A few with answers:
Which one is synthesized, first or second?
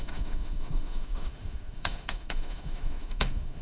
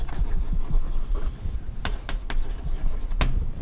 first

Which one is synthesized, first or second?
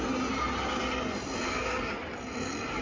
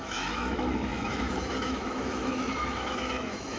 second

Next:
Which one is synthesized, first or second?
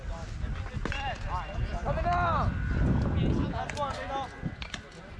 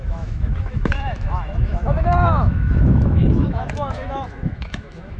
second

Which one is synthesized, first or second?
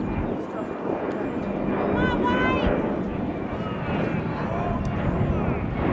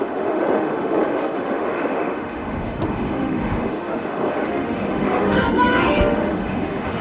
second